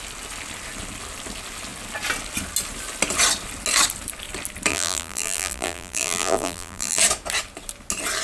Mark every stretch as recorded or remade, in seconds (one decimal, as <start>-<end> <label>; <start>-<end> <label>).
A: 0.0-4.7 recorded; 4.7-7.0 remade; 7.0-8.2 recorded